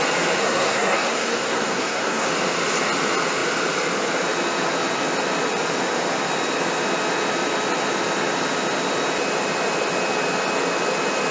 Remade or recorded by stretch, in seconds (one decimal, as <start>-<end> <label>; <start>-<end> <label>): 0.0-0.4 recorded; 0.4-2.3 remade; 2.3-11.3 recorded